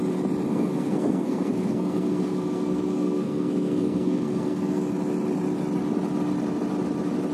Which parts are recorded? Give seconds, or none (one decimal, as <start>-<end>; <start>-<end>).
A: 0.0-0.5; 4.9-7.3